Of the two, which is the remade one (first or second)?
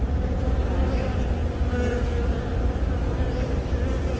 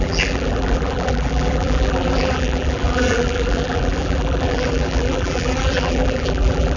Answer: second